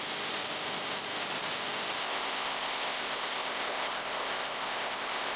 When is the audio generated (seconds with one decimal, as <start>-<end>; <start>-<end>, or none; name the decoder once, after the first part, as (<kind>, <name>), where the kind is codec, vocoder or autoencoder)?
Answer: 2.0-5.4 (codec, ZipCodec)